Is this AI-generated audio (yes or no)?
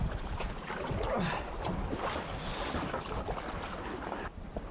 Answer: no